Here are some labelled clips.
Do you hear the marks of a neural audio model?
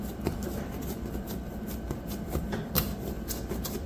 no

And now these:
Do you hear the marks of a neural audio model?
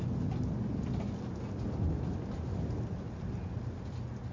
no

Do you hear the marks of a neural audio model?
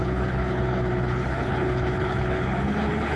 yes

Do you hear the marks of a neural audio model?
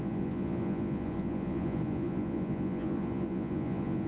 yes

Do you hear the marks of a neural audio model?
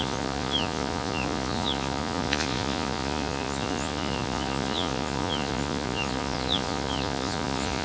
yes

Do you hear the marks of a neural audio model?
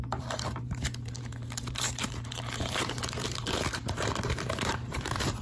yes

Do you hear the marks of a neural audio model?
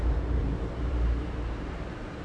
yes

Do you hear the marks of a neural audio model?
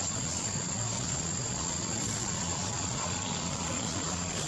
yes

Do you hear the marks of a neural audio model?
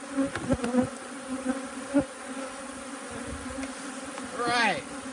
no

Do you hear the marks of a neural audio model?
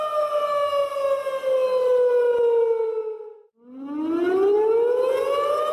no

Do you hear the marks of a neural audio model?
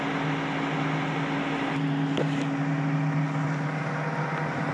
no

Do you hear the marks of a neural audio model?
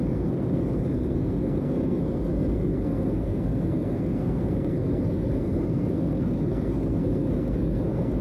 yes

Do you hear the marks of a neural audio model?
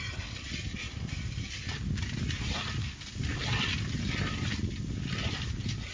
no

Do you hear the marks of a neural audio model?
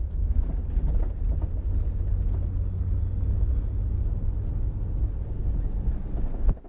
no